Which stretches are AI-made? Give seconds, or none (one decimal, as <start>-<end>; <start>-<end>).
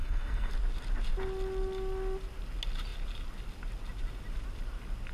0.0-0.5